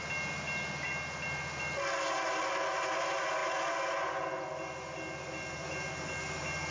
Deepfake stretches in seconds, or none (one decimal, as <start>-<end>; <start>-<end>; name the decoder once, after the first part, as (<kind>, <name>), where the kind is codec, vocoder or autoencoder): none